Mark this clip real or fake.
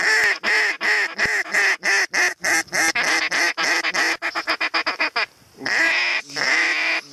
real